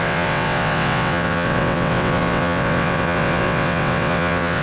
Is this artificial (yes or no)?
yes